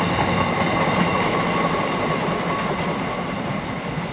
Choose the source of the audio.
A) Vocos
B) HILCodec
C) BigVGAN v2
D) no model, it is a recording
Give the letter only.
D